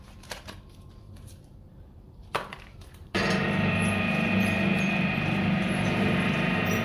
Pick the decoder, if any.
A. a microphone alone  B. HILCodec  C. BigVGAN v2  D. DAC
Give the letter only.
C